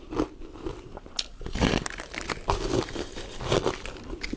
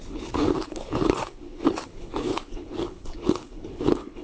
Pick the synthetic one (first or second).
second